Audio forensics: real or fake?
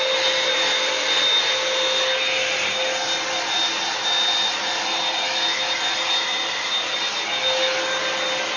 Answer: real